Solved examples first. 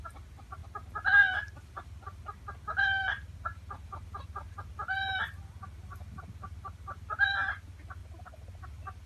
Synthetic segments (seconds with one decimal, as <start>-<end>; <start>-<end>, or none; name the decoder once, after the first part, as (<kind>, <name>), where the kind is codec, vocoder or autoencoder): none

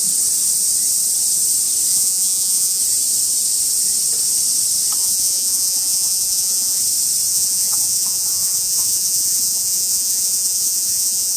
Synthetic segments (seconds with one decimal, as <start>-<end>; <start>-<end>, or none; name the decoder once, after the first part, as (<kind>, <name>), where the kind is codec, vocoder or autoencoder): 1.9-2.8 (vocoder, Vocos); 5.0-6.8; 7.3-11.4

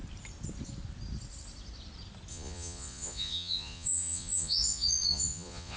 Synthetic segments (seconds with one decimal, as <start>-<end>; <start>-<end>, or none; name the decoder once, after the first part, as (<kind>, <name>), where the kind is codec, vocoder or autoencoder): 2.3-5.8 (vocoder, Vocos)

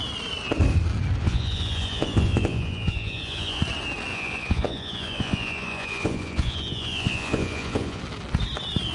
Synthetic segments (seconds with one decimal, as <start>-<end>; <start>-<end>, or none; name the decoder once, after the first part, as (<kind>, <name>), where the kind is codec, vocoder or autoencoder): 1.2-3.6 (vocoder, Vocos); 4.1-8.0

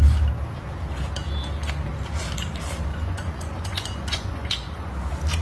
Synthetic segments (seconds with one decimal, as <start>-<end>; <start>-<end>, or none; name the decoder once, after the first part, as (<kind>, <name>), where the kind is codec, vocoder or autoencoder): 2.9-4.9 (vocoder, Vocos)

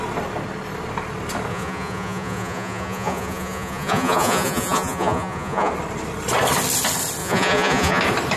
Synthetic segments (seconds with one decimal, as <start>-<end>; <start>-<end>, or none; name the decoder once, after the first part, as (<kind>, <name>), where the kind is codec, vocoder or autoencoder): 1.5-5.7 (vocoder, Vocos); 7.2-8.0